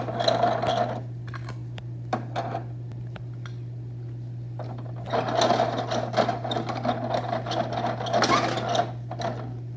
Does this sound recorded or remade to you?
recorded